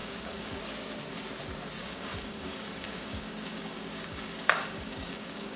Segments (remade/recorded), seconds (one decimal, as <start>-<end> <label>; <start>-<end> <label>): 0.0-0.6 remade; 0.6-1.8 recorded; 1.8-5.6 remade